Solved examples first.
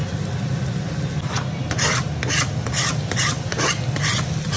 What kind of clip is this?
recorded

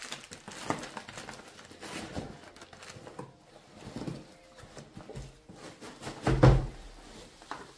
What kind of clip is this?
recorded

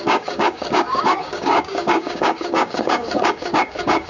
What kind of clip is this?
remade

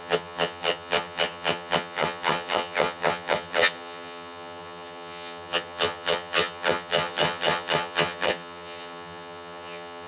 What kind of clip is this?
remade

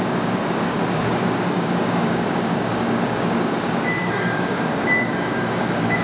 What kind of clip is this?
remade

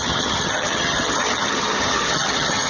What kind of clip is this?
remade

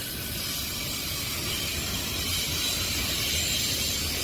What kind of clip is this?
recorded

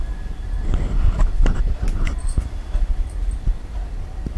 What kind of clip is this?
recorded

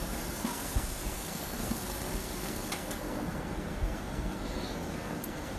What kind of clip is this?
remade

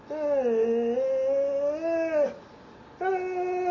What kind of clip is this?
recorded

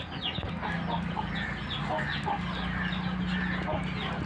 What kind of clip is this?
recorded